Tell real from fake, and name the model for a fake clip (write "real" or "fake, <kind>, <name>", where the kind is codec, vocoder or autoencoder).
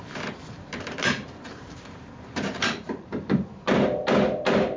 fake, vocoder, BigVGAN v2